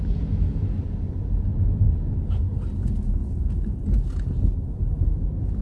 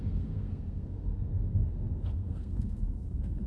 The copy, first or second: second